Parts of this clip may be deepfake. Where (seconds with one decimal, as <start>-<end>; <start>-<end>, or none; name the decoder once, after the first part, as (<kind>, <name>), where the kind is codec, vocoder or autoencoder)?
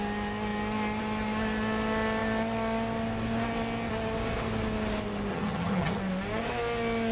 5.3-6.0 (vocoder, HiFi-GAN)